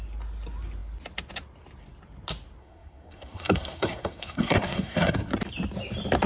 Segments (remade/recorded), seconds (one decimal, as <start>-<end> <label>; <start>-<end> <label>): 0.0-2.6 recorded; 2.6-5.3 remade; 5.3-6.3 recorded